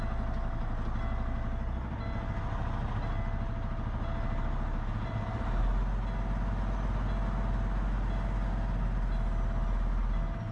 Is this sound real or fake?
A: real